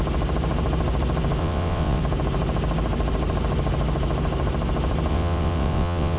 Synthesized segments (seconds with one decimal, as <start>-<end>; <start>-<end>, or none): 1.4-2.0; 5.1-6.2